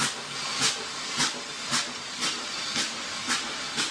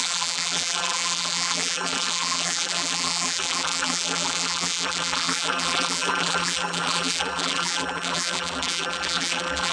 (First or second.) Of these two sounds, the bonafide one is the first